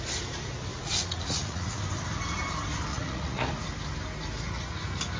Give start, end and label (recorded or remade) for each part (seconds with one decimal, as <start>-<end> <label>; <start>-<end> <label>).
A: 0.0-0.7 recorded; 0.7-1.8 remade; 1.8-2.9 recorded; 2.9-3.5 remade; 3.5-5.2 recorded

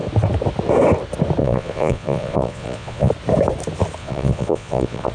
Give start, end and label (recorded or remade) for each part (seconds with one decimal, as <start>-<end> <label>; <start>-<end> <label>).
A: 0.0-1.4 recorded; 1.4-3.1 remade; 3.1-4.0 recorded; 4.0-5.1 remade

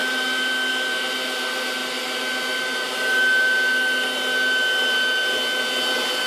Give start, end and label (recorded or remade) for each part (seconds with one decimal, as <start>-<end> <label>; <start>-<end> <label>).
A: 0.0-6.3 recorded

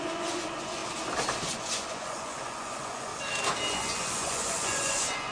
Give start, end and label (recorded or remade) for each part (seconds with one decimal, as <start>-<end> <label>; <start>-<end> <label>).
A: 0.0-0.8 remade; 0.8-1.4 recorded; 1.4-3.1 remade; 3.1-3.7 recorded; 3.7-5.3 remade